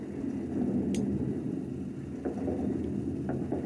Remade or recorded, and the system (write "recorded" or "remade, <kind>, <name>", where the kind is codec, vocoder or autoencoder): recorded